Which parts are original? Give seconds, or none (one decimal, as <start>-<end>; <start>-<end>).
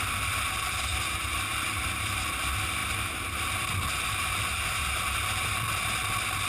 0.0-6.5